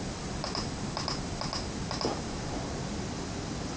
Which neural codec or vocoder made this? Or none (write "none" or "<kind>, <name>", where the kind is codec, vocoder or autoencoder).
none